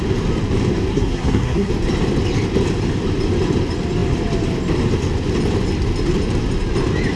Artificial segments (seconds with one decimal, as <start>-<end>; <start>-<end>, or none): 0.9-1.7